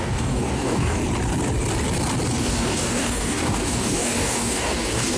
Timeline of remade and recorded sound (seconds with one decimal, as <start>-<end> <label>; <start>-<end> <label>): 0.0-1.0 remade; 1.0-2.4 recorded; 2.4-5.2 remade